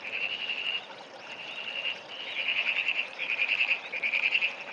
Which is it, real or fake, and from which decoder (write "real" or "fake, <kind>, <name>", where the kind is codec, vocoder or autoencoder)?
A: fake, vocoder, BigVGAN v2